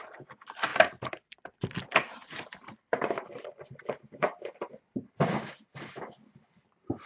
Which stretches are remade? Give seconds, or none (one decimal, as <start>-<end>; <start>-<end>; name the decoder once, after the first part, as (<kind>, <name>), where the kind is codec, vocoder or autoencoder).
0.0-0.7 (vocoder, BigVGAN v2); 1.3-2.5; 4.7-7.1

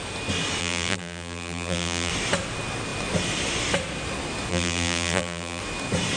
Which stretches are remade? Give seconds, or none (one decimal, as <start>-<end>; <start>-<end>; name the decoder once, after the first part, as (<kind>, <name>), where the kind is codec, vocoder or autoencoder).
0.6-2.1 (vocoder, BigVGAN v2); 4.5-5.6

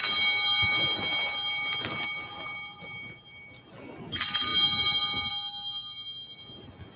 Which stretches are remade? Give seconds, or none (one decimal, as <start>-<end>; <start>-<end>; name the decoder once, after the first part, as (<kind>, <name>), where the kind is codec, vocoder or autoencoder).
none